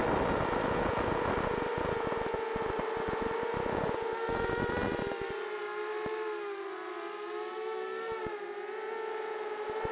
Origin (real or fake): real